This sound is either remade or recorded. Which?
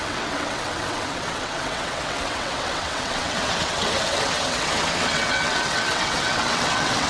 remade